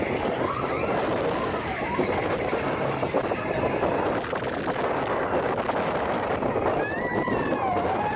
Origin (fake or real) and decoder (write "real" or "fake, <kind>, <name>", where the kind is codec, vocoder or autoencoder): real